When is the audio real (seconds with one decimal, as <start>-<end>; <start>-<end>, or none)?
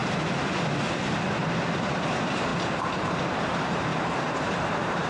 0.0-1.4